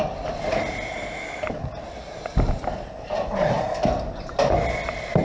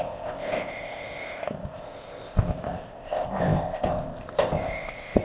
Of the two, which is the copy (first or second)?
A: second